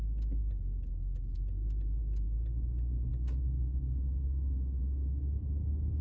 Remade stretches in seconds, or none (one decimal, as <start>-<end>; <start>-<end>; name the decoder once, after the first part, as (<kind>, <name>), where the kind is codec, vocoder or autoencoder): none